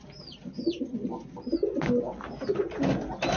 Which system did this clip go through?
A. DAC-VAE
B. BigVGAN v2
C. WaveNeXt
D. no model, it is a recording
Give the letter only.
D